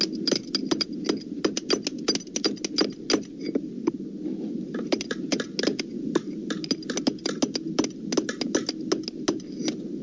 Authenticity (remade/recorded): recorded